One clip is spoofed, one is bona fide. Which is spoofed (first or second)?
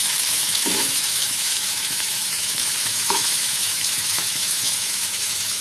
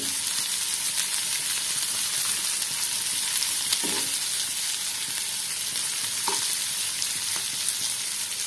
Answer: first